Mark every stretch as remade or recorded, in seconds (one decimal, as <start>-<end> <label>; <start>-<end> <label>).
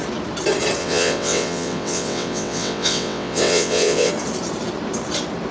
0.0-0.8 recorded; 0.8-4.1 remade; 4.1-5.5 recorded